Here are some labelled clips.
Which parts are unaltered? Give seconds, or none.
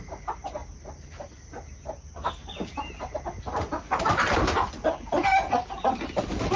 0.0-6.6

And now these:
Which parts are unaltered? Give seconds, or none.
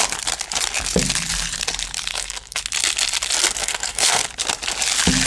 0.0-2.1; 2.6-3.6; 4.2-5.3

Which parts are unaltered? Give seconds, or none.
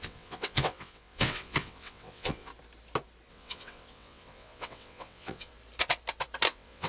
2.5-3.3; 5.5-6.5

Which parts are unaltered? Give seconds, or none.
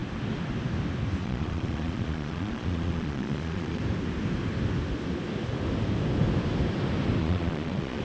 0.0-1.2; 3.8-7.2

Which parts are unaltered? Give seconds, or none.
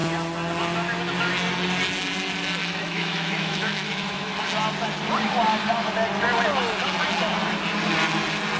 0.0-2.6; 4.4-8.6